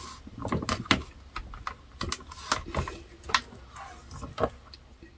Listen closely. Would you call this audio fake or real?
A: real